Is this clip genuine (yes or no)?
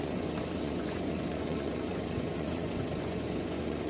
no